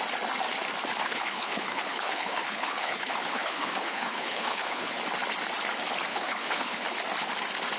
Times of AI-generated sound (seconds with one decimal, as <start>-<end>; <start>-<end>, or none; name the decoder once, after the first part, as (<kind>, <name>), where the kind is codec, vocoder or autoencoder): 1.0-5.0 (codec, HILCodec); 6.1-6.9

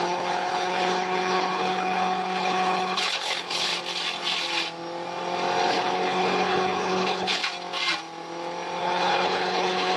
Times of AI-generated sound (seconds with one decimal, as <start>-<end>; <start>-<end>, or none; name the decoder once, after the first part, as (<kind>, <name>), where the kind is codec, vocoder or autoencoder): 0.0-3.7 (codec, HILCodec); 5.7-7.4; 8.8-10.0